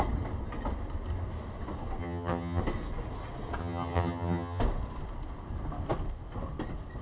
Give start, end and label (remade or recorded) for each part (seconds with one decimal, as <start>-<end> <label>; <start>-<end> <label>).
0.0-2.0 recorded; 2.0-2.6 remade; 2.6-3.6 recorded; 3.6-4.6 remade; 4.6-7.0 recorded